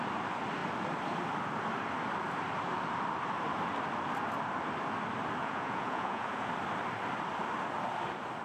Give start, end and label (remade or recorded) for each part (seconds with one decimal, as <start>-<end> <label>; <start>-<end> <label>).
0.0-5.4 recorded; 5.4-6.5 remade; 6.5-8.4 recorded